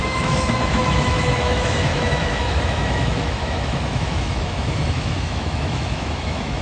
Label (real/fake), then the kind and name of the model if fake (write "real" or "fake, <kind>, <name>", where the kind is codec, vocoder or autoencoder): fake, autoencoder, DAC-VAE